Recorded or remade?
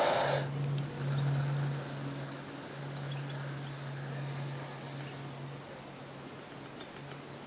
recorded